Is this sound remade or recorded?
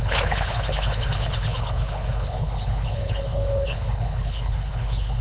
remade